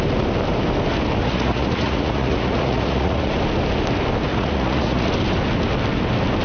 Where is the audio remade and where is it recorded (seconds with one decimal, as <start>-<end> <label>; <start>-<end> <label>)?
0.0-1.2 recorded; 1.2-3.3 remade; 3.3-4.3 recorded; 4.3-5.1 remade; 5.1-6.4 recorded